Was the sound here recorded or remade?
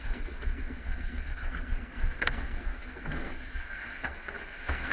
remade